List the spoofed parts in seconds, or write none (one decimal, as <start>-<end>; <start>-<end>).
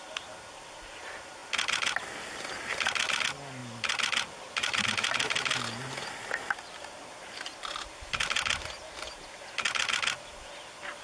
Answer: none